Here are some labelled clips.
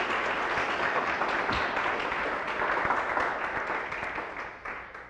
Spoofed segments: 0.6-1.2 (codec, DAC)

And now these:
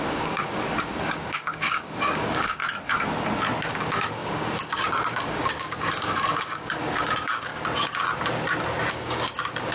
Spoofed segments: 0.0-2.6 (codec, DAC); 3.7-7.5; 8.9-9.7